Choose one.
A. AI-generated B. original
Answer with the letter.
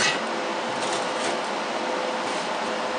B